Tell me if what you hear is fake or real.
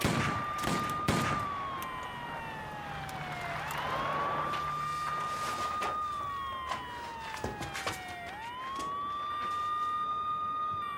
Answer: real